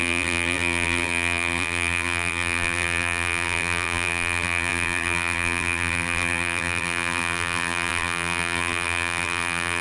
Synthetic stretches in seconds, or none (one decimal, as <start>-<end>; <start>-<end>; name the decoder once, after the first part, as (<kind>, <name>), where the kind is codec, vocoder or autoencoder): 0.0-9.8 (vocoder, BigVGAN v2)